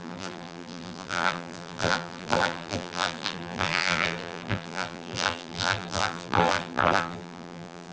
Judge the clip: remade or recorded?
remade